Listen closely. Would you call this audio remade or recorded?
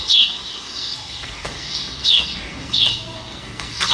remade